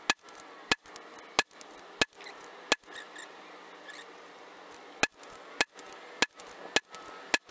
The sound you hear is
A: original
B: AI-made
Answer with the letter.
A